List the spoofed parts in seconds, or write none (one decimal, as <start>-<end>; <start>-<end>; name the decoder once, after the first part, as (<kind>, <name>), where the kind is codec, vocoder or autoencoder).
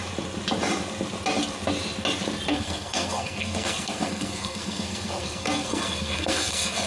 2.5-6.9 (codec, SNAC)